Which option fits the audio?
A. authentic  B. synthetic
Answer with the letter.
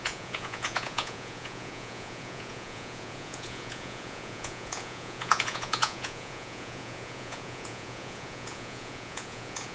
B